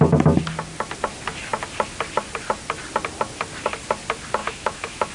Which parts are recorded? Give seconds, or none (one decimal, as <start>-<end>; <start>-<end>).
0.0-4.4